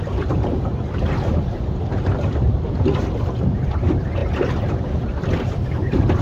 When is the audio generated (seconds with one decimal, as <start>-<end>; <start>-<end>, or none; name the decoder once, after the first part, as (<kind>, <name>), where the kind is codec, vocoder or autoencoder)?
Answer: 0.0-6.2 (vocoder, BigVGAN v2)